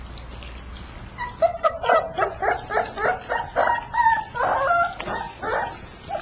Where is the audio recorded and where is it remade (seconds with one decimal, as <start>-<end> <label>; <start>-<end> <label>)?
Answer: 0.0-6.2 recorded